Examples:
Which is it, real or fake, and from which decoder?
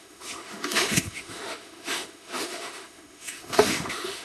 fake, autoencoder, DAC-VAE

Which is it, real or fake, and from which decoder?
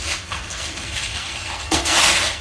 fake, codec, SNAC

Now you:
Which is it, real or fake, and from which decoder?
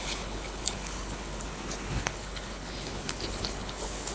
fake, codec, HILCodec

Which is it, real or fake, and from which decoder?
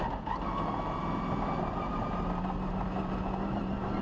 real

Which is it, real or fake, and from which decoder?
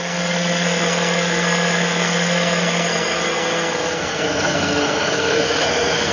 fake, codec, SNAC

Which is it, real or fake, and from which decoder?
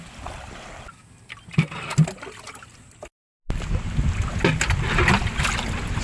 real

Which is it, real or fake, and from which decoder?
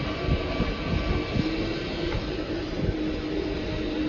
real